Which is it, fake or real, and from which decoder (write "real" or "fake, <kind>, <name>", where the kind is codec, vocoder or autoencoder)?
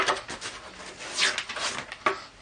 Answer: real